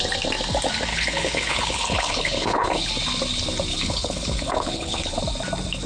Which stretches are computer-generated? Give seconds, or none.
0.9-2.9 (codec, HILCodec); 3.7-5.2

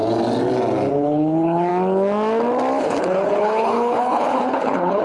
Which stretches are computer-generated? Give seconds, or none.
0.9-1.7 (codec, HILCodec); 2.8-5.0